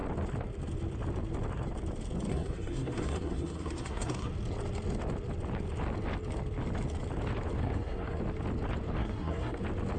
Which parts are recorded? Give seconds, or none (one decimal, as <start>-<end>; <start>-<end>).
0.0-2.3; 4.3-7.6; 8.2-9.0; 9.6-10.0